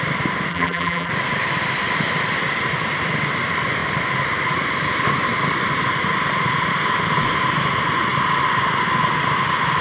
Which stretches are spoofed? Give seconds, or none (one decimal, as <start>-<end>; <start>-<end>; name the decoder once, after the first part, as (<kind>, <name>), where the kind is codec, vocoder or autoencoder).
0.5-1.1 (vocoder, BigVGAN v2)